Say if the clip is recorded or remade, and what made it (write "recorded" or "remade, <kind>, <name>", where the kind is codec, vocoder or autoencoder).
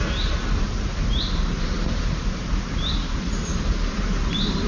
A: remade, vocoder, BigVGAN v2